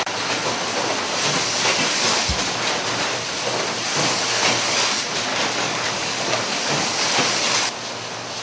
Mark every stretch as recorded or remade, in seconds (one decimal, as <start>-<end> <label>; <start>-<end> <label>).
0.0-5.3 recorded; 5.3-6.8 remade; 6.8-8.4 recorded